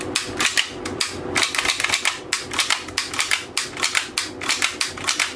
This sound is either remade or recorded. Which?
recorded